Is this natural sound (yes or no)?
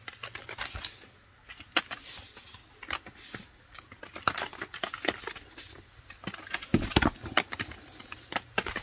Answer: yes